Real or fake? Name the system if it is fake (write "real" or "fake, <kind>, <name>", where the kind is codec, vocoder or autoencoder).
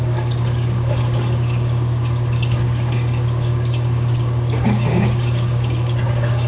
fake, codec, DAC